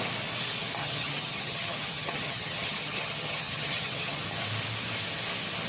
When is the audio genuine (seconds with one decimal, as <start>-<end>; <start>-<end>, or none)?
0.0-0.8; 4.2-5.7